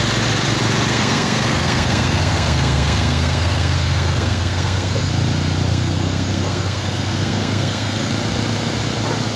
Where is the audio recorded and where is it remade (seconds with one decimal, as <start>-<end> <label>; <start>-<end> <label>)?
0.0-0.9 recorded; 0.9-5.1 remade; 5.1-5.7 recorded; 5.7-8.1 remade; 8.1-9.4 recorded